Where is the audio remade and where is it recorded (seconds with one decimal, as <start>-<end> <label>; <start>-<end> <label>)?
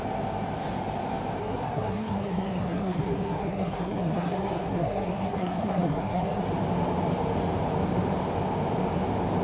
0.0-1.4 recorded; 1.4-6.4 remade; 6.4-9.4 recorded